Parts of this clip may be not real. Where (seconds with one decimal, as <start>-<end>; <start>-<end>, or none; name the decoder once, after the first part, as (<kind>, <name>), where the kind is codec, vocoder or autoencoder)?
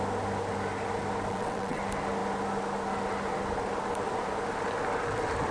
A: 1.3-1.8 (vocoder, WaveNeXt)